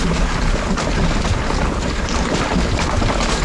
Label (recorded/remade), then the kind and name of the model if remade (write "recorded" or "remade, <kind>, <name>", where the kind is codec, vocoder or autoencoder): recorded